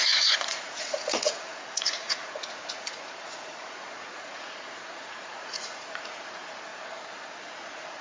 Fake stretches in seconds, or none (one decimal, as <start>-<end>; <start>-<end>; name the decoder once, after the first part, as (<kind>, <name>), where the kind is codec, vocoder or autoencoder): 0.0-6.7 (vocoder, Vocos); 7.4-8.0